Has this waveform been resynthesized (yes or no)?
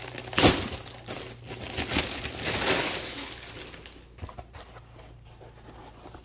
no